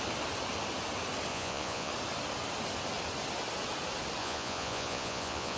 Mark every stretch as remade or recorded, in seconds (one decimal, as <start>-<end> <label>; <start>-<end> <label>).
0.0-1.3 recorded; 1.3-1.9 remade; 1.9-4.2 recorded; 4.2-5.6 remade